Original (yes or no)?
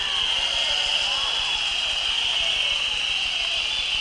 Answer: yes